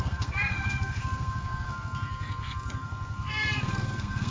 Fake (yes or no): yes